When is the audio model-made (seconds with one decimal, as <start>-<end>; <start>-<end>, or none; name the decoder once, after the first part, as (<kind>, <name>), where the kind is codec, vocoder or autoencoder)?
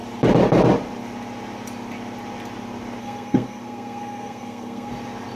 3.0-4.9 (codec, SNAC)